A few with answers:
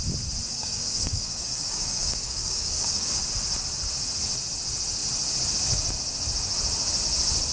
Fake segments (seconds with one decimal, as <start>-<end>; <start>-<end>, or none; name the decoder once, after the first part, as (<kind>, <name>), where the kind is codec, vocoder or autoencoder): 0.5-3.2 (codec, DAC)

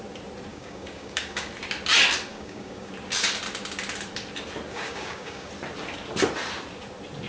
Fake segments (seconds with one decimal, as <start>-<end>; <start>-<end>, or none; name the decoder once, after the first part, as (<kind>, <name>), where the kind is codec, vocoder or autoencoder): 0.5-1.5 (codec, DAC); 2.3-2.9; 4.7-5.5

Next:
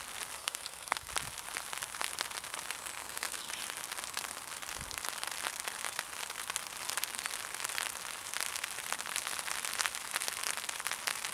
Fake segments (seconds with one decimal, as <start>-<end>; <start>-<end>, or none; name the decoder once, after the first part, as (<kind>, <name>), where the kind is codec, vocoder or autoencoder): 0.4-1.1 (codec, SNAC); 3.0-3.5

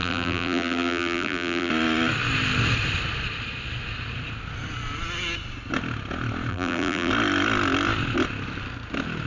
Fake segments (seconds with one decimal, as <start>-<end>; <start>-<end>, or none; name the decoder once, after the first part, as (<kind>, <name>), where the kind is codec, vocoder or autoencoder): 0.0-1.7 (vocoder, BigVGAN v2); 6.5-7.1